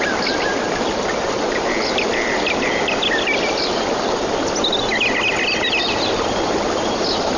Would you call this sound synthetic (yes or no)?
no